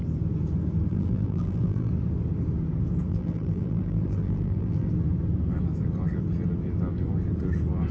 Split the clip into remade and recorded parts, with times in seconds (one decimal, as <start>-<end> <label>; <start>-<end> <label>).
0.0-0.9 recorded; 0.9-1.9 remade; 1.9-3.1 recorded; 3.1-4.9 remade; 4.9-7.9 recorded

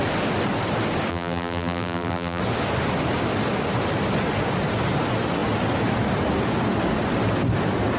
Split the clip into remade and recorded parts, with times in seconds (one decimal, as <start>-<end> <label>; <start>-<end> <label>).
0.0-1.1 recorded; 1.1-2.4 remade; 2.4-8.0 recorded